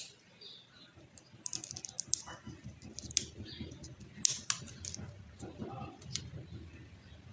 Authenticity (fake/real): real